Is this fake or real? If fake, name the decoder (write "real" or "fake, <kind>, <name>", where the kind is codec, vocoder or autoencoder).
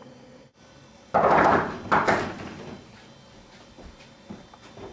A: fake, vocoder, BigVGAN v2